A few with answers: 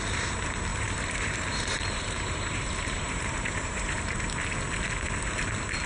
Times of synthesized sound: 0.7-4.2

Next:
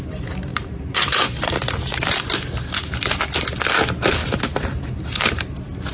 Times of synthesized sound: 0.5-3.1; 4.2-5.4